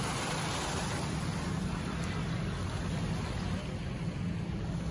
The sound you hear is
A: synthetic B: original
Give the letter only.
B